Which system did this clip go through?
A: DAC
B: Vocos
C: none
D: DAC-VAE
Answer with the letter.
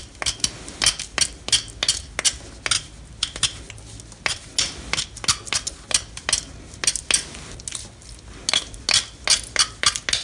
C